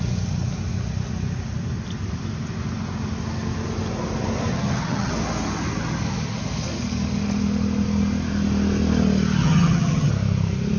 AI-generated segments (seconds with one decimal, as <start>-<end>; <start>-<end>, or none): 4.5-5.1; 9.4-10.1